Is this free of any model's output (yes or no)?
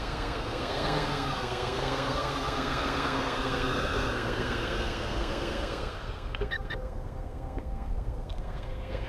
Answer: no